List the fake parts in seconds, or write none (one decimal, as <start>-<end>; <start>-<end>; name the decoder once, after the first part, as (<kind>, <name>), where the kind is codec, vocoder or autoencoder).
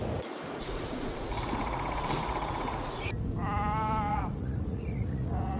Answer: 0.0-3.1 (vocoder, Vocos); 4.1-5.6